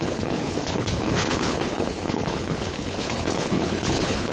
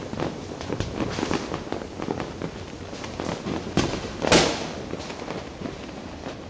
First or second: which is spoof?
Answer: first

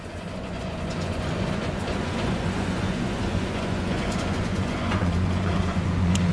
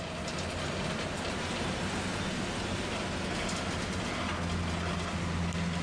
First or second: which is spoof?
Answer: first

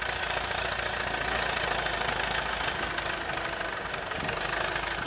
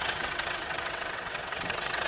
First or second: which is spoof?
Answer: second